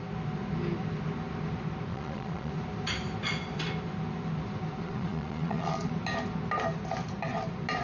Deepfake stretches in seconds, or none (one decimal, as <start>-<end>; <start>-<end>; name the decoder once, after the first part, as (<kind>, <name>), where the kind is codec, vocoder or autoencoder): 1.9-2.5 (vocoder, Vocos); 4.8-5.9